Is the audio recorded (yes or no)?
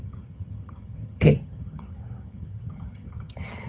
no